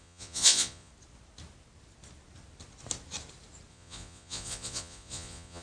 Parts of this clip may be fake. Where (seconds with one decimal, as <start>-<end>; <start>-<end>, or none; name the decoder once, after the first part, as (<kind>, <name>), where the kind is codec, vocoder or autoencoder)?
0.0-0.9 (vocoder, Vocos); 3.7-5.6